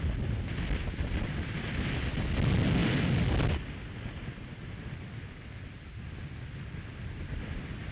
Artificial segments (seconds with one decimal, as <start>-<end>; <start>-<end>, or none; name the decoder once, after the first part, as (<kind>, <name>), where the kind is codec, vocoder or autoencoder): none